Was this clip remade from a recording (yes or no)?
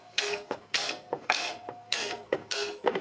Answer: yes